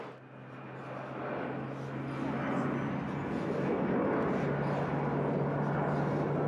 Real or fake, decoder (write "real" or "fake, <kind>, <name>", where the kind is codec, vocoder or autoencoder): real